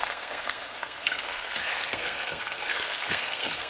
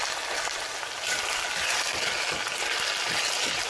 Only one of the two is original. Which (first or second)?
second